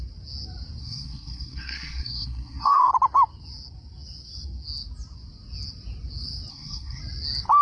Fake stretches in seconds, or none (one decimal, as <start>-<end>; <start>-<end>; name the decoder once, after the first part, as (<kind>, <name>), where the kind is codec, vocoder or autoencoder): 0.8-2.9 (codec, SNAC); 6.5-7.0